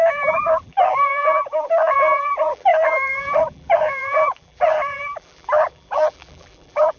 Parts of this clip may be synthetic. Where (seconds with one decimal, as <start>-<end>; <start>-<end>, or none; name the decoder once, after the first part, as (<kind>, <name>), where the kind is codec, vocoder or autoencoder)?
0.0-7.0 (vocoder, BigVGAN v2)